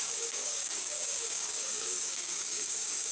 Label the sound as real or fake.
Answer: fake